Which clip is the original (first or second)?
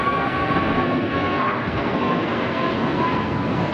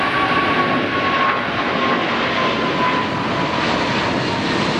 second